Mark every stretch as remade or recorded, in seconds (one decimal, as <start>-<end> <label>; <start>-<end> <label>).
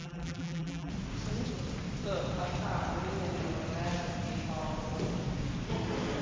0.0-0.9 remade; 0.9-6.2 recorded